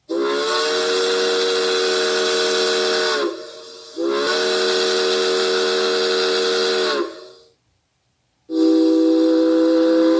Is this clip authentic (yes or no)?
yes